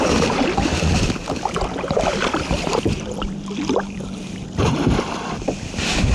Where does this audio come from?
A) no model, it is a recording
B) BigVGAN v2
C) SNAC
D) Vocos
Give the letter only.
B